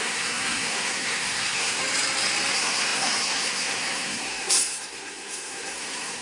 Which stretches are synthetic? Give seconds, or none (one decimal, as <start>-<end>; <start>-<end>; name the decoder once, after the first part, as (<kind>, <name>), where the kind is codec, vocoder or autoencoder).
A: 0.0-1.8 (codec, SNAC); 2.5-6.2